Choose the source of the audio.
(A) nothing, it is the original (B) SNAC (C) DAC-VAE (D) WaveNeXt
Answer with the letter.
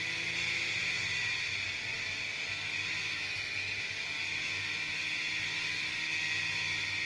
A